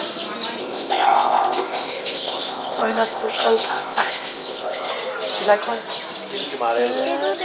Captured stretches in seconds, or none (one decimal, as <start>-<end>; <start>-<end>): 0.0-0.6; 4.9-7.4